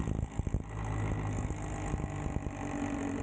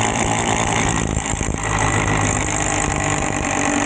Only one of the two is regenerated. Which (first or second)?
second